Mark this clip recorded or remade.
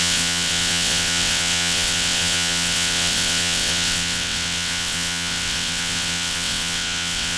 remade